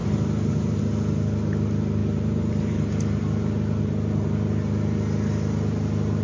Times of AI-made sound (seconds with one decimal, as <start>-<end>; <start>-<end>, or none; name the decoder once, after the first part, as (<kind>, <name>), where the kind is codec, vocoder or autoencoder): 0.0-0.8 (vocoder, BigVGAN v2); 2.0-3.2